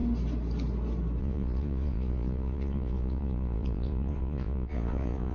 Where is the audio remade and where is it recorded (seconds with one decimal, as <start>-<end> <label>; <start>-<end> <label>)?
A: 0.0-1.2 recorded; 1.2-5.3 remade